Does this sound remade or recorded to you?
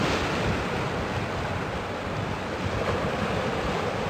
recorded